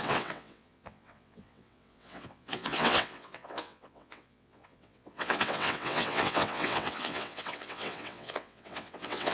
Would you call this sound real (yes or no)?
no